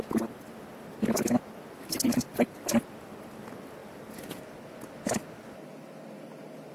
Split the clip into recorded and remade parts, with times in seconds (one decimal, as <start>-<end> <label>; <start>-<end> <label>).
0.0-6.7 recorded